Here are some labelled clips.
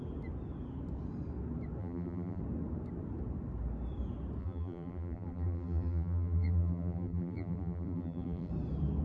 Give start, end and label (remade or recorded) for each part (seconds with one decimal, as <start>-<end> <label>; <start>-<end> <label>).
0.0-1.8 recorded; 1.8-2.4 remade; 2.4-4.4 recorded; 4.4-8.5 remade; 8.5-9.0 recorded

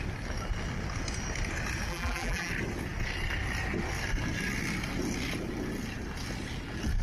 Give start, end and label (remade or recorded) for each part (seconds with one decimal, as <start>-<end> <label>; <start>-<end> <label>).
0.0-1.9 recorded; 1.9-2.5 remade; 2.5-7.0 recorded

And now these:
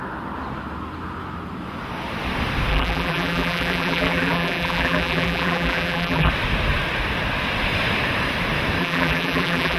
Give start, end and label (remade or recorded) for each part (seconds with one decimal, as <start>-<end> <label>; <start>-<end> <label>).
0.0-2.7 recorded; 2.7-6.3 remade; 6.3-8.8 recorded; 8.8-9.8 remade

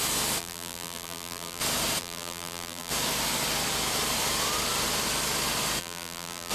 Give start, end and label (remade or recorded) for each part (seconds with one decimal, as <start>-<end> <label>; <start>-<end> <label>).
0.0-0.4 recorded; 0.4-1.6 remade; 1.6-2.0 recorded; 2.0-2.9 remade; 2.9-5.8 recorded; 5.8-6.5 remade

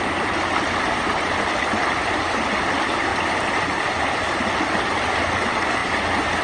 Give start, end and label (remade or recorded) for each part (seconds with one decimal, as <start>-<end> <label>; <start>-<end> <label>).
0.0-2.0 recorded; 2.0-2.5 remade; 2.5-3.1 recorded; 3.1-4.4 remade; 4.4-5.8 recorded; 5.8-6.4 remade

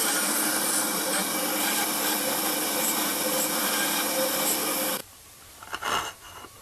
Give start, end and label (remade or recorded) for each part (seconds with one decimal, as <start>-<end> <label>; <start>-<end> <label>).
0.0-5.0 recorded; 5.0-5.9 remade; 5.9-6.6 recorded

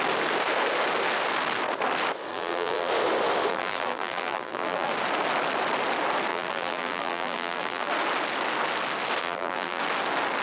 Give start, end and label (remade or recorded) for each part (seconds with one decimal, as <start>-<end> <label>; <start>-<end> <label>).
0.0-2.3 recorded; 2.3-2.9 remade; 2.9-3.5 recorded; 3.5-4.9 remade; 4.9-6.3 recorded; 6.3-7.9 remade; 7.9-9.2 recorded; 9.2-9.8 remade; 9.8-10.4 recorded

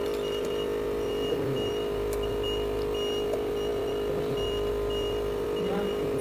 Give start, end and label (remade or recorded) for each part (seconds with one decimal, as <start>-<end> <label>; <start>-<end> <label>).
0.0-6.2 recorded